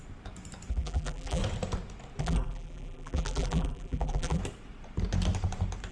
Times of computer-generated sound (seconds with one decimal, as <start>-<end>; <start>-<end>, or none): 0.7-1.4; 2.2-4.4